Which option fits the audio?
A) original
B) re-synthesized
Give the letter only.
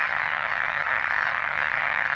B